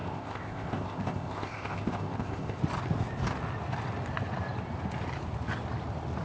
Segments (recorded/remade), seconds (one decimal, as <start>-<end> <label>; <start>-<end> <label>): 0.0-2.6 remade; 2.6-6.2 recorded